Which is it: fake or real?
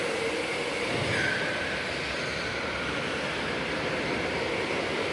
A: real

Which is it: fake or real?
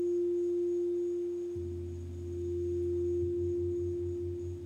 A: real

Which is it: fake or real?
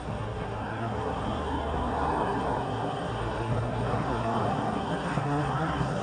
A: fake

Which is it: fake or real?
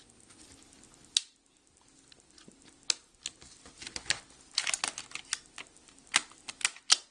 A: real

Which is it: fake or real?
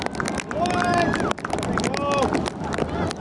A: real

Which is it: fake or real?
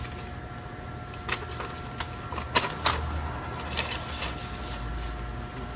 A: real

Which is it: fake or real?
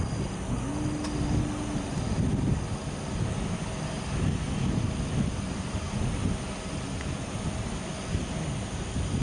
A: real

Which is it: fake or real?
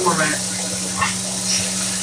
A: real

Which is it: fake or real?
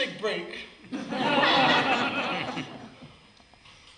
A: real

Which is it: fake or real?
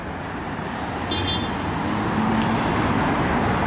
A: real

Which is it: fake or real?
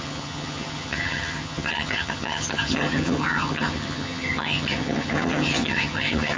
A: fake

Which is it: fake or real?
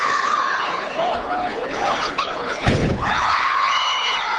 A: fake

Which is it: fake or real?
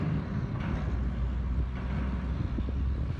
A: real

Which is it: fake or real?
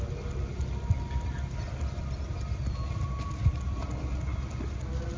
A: real